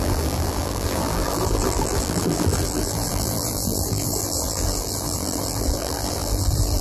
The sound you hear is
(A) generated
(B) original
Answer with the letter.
A